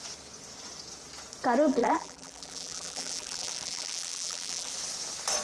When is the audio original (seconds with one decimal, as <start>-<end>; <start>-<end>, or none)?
0.0-1.7; 4.7-5.4